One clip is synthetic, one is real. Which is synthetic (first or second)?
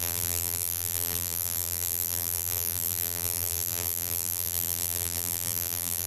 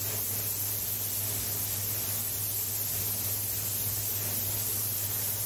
first